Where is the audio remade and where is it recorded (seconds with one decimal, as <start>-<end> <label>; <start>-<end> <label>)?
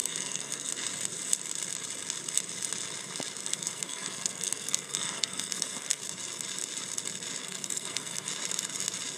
0.0-0.7 remade; 0.7-3.4 recorded; 3.4-6.0 remade; 6.0-7.4 recorded; 7.4-8.3 remade; 8.3-9.2 recorded